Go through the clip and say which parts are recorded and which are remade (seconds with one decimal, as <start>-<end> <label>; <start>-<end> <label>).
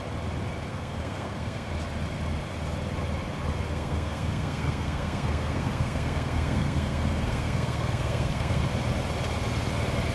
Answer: 0.0-0.7 recorded; 0.7-1.7 remade; 1.7-3.7 recorded; 3.7-8.6 remade; 8.6-10.1 recorded